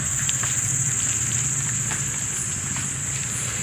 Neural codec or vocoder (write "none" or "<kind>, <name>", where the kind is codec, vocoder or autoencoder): vocoder, BigVGAN v2